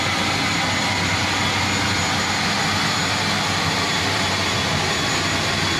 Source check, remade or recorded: recorded